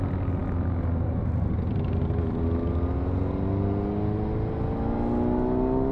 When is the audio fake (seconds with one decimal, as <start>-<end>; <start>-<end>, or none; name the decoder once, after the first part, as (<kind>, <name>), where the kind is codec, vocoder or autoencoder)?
none